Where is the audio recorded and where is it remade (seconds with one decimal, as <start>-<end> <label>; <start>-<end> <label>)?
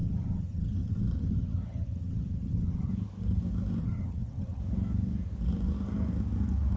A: 0.0-2.9 remade; 2.9-3.8 recorded; 3.8-4.6 remade; 4.6-6.8 recorded